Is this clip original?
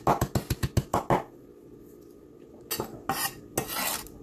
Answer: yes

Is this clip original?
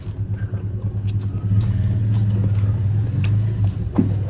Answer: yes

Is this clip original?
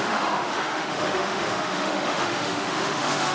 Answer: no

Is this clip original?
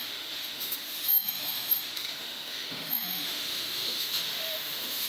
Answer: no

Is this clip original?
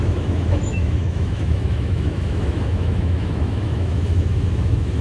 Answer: no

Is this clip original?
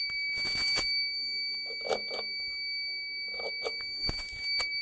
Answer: yes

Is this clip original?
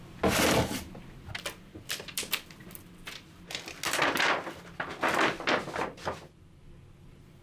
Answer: yes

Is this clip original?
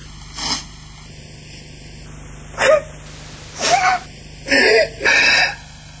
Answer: yes